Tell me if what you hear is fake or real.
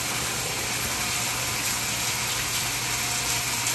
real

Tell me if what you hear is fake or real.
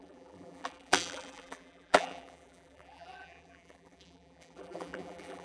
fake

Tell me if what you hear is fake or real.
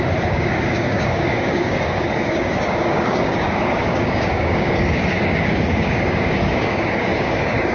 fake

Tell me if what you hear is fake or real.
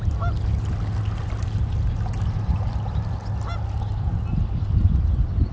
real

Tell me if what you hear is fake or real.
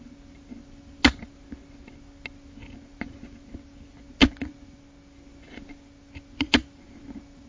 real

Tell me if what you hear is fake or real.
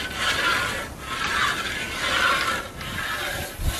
real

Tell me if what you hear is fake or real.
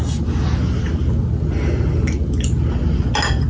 real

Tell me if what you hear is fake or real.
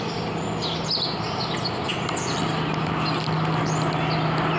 real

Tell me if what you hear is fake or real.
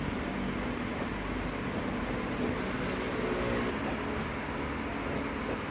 real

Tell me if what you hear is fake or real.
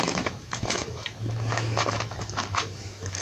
fake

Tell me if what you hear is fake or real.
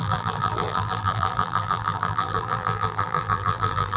fake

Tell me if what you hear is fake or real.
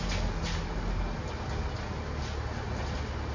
real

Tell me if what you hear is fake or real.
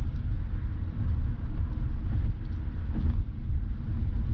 real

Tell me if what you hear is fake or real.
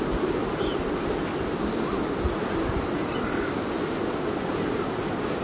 real